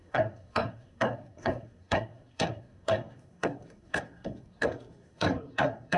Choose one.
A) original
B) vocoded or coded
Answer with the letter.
B